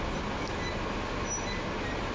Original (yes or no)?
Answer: yes